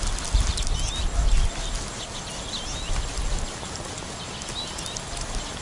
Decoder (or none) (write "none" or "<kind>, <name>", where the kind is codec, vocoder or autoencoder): none